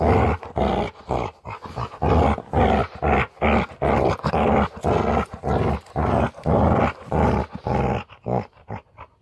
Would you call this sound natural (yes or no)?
yes